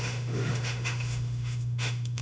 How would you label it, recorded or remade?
remade